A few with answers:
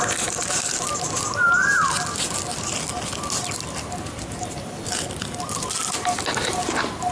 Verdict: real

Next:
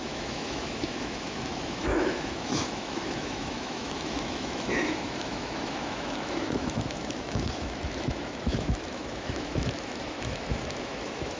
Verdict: fake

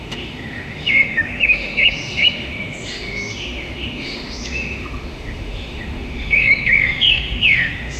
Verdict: fake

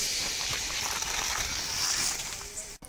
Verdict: real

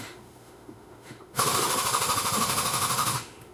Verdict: fake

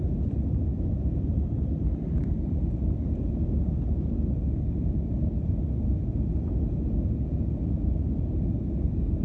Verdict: real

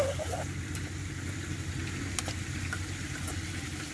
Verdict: real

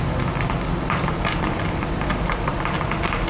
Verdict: real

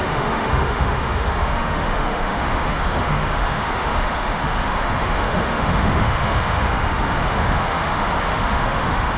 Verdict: fake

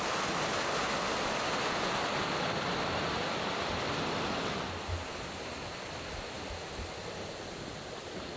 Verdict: real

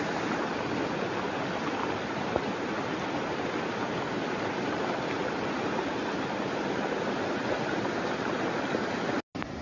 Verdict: real